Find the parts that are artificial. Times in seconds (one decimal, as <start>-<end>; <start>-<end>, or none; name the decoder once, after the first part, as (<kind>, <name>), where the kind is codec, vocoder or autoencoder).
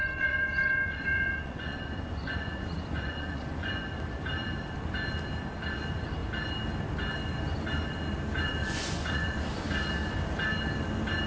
0.0-3.8 (vocoder, Vocos); 8.6-9.4